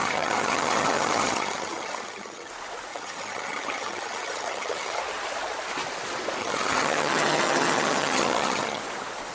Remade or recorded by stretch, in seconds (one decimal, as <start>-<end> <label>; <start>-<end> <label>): 0.0-2.5 remade; 2.5-2.9 recorded; 2.9-5.0 remade; 5.0-6.4 recorded; 6.4-8.8 remade; 8.8-9.3 recorded